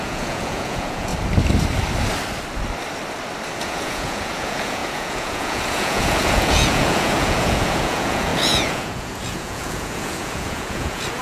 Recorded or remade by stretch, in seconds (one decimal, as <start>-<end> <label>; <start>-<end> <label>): 0.0-1.1 remade; 1.1-3.6 recorded; 3.6-11.2 remade